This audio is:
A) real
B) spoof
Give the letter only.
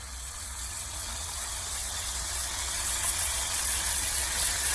B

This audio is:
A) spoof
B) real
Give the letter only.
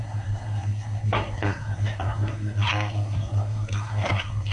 A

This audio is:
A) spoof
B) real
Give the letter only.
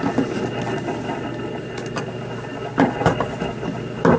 B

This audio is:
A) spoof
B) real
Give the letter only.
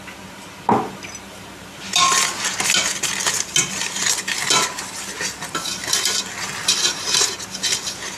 B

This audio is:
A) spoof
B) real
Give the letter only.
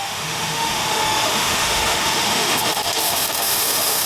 A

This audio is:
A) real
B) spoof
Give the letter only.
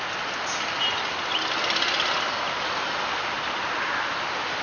A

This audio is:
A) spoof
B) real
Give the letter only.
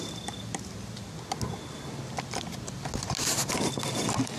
B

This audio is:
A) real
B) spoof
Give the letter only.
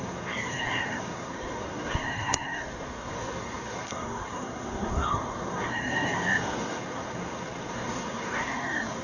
B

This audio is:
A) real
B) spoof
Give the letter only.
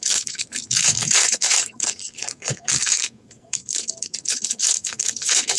B